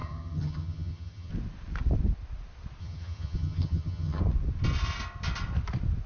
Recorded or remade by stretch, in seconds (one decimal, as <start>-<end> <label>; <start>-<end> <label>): 0.0-1.3 remade; 1.3-2.8 recorded; 2.8-4.2 remade; 4.2-6.1 recorded